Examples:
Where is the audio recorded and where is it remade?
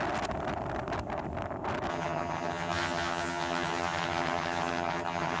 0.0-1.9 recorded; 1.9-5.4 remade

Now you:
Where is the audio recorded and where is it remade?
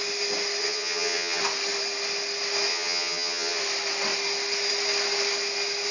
0.0-0.6 recorded; 0.6-1.4 remade; 1.4-2.7 recorded; 2.7-3.6 remade; 3.6-5.9 recorded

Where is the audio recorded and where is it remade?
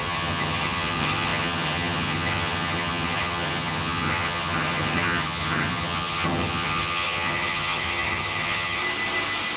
0.0-8.8 remade; 8.8-9.6 recorded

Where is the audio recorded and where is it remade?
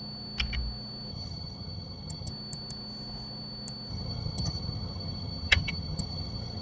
0.0-1.1 recorded; 1.1-2.3 remade; 2.3-3.9 recorded; 3.9-6.6 remade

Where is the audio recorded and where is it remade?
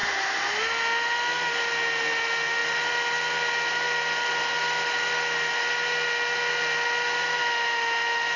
0.0-8.4 recorded